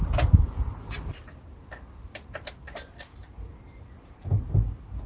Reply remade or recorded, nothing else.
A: recorded